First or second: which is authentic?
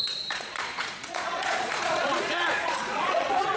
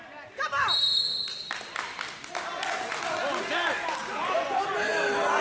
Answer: second